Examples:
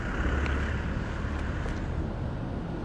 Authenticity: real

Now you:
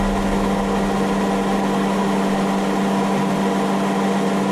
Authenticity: real